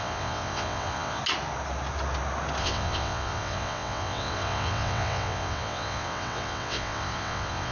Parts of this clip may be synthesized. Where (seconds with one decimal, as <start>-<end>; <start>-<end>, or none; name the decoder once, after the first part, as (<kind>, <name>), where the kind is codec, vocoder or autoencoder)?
0.0-1.2 (vocoder, WaveNeXt); 2.6-7.7